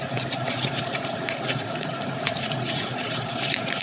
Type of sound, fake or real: fake